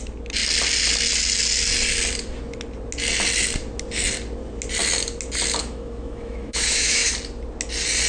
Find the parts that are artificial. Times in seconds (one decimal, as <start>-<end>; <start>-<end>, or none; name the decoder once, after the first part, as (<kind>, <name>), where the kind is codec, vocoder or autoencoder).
5.6-7.1 (autoencoder, DAC-VAE)